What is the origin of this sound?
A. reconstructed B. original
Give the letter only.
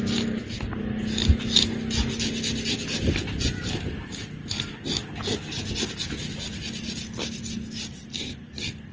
B